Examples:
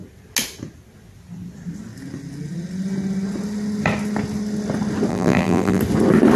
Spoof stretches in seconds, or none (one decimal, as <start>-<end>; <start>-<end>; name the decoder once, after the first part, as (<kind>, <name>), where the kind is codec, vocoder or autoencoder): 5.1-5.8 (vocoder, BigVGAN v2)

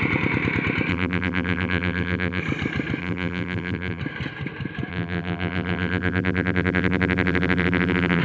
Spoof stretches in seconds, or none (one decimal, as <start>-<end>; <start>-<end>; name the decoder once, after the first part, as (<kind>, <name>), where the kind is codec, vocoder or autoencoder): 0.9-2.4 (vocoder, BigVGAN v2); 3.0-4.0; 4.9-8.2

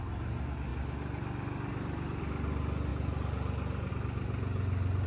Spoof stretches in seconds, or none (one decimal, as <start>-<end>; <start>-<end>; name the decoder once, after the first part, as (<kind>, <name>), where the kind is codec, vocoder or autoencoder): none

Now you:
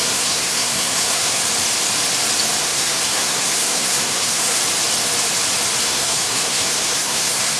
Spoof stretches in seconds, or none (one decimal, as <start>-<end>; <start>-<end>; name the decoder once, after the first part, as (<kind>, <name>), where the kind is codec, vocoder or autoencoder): 0.0-1.4 (codec, SNAC); 2.6-4.6; 5.8-7.6

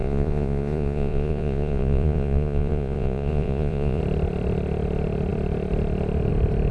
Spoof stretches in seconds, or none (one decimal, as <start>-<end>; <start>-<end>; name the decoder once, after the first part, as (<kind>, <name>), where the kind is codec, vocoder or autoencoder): 0.0-4.0 (vocoder, Vocos)